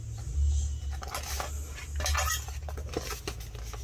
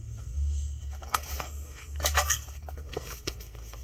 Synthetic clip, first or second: second